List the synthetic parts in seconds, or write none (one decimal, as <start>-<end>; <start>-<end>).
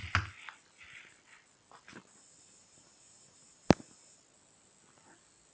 none